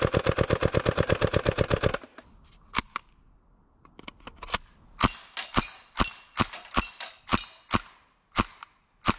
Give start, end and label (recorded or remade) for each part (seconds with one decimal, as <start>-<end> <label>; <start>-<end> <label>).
0.0-9.2 recorded